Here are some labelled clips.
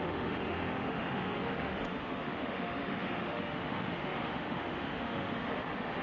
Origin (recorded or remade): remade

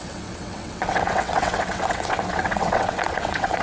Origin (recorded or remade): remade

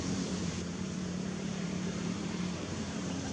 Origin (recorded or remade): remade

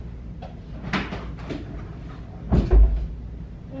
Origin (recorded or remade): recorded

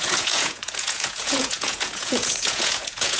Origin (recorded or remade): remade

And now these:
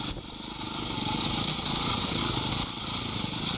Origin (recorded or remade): remade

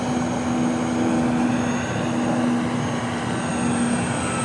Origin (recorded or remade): remade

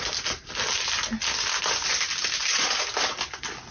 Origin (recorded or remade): recorded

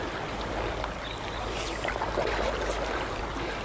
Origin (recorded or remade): recorded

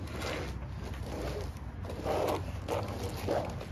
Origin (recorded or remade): recorded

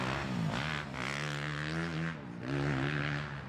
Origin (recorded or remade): recorded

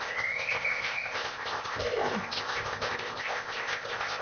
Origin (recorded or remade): remade